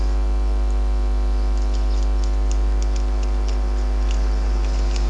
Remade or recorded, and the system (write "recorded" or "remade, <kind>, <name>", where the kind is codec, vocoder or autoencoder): recorded